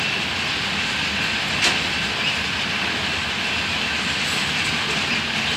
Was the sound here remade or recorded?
recorded